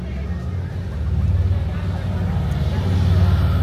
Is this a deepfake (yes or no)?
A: no